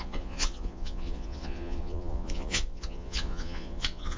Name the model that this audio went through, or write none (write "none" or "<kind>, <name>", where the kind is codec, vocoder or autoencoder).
vocoder, Vocos